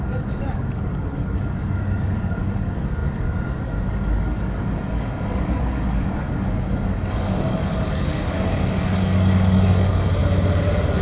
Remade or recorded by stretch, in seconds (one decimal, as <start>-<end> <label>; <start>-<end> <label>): 0.0-10.2 remade; 10.2-11.0 recorded